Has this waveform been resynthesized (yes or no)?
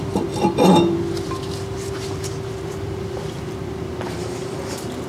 yes